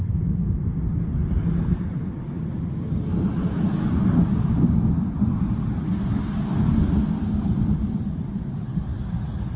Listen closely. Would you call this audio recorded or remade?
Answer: recorded